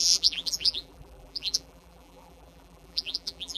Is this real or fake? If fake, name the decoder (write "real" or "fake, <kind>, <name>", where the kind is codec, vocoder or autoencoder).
fake, vocoder, BigVGAN v2